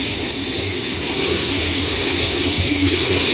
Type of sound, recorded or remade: remade